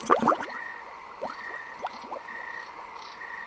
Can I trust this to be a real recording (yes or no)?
no